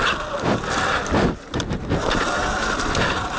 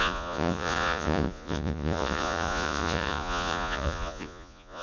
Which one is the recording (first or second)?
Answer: first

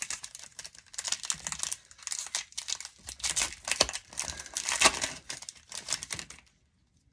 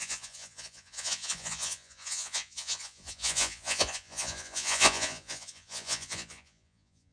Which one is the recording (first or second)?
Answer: first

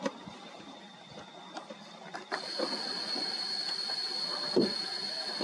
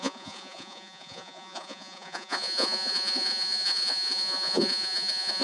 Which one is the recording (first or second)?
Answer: first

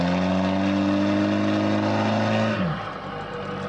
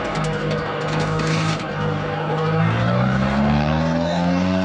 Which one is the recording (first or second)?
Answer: first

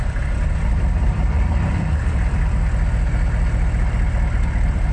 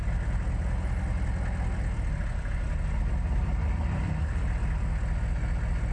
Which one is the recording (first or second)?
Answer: second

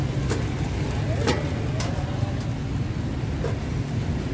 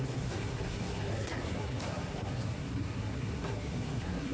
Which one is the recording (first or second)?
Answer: first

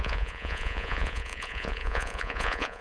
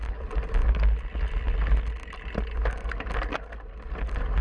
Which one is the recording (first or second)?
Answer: second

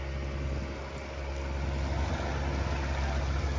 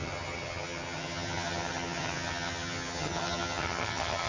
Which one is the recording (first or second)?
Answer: first